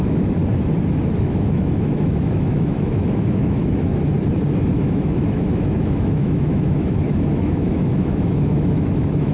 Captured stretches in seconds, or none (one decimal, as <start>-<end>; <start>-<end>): 0.4-1.0; 3.9-4.6